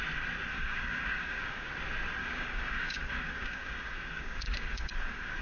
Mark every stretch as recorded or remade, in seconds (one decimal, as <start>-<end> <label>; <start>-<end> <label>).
0.0-0.5 recorded; 0.5-1.7 remade; 1.7-2.2 recorded; 2.2-5.4 remade